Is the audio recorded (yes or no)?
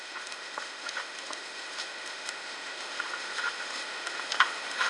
no